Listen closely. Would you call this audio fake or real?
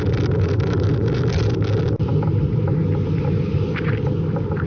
real